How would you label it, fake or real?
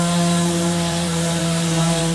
fake